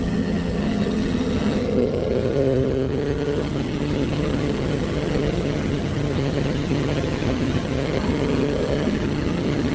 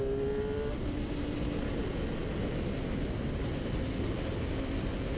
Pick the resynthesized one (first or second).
first